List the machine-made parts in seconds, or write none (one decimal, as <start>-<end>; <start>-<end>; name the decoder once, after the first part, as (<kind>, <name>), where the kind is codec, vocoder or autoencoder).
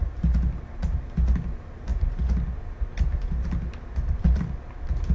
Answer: none